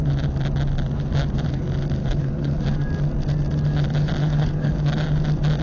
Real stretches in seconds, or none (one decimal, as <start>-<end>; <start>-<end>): 0.0-2.0; 2.6-4.2; 4.7-5.6